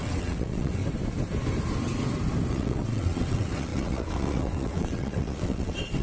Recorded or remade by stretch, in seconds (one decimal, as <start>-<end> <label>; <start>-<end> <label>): 0.0-0.8 remade; 0.8-2.5 recorded; 2.5-6.0 remade